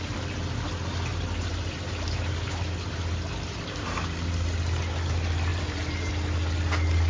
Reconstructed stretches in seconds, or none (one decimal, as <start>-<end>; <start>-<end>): 1.1-2.7; 5.5-6.1